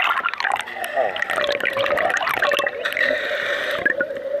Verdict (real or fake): real